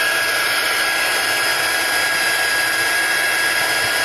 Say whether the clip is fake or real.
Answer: real